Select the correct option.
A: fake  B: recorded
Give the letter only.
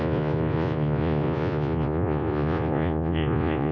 A